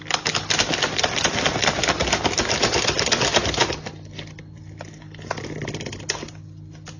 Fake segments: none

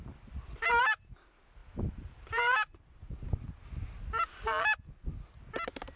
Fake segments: none

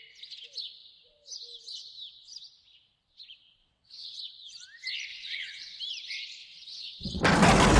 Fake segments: 3.6-4.2 (vocoder, WaveNeXt); 5.1-5.8; 6.4-7.2

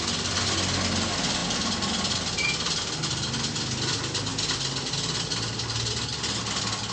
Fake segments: none

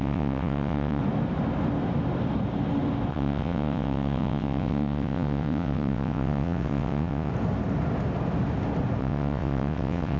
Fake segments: 0.0-1.0 (vocoder, WaveNeXt); 3.1-7.3; 9.0-10.2

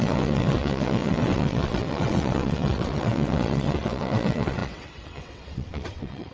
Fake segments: 0.0-6.3 (vocoder, WaveNeXt)

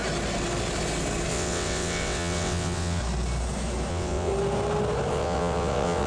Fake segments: 1.3-3.0 (vocoder, WaveNeXt); 3.9-4.3; 5.1-6.1

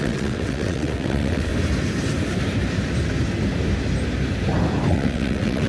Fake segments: 0.0-1.5 (vocoder, WaveNeXt); 4.9-5.7